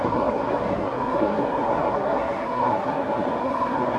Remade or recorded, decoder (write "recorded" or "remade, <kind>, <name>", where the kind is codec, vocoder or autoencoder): remade, codec, SNAC